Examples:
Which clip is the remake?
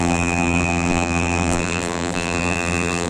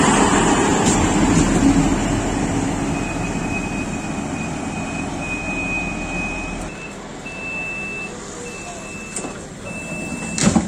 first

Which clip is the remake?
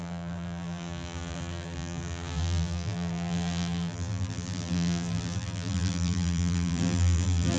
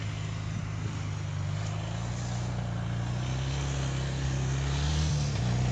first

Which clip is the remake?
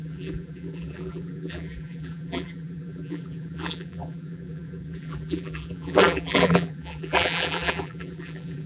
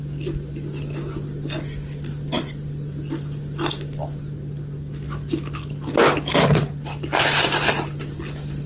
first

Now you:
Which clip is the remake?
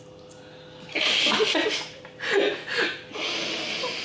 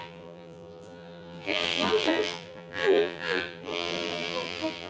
second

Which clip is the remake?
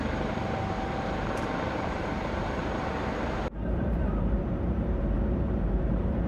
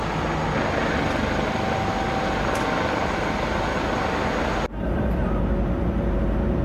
first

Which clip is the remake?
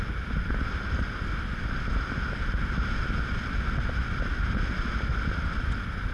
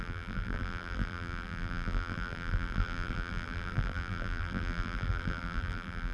second